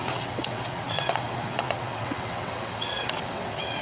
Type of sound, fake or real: fake